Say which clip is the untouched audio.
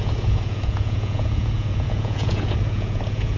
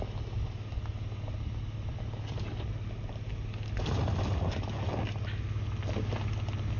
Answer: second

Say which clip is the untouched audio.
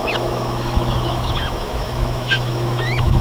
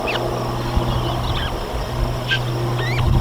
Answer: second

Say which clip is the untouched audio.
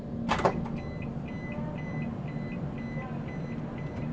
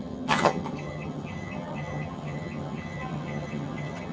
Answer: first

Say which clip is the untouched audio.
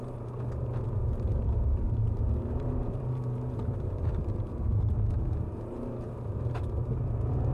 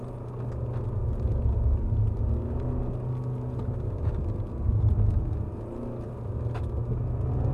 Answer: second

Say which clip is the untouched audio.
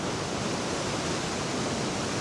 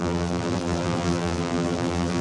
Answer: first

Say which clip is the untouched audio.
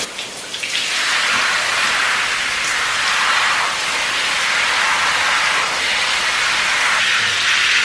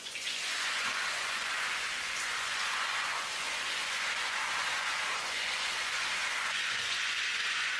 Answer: first